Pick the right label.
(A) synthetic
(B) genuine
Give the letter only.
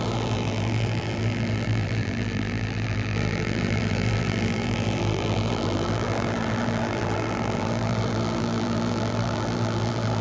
A